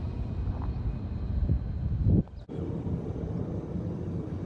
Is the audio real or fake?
real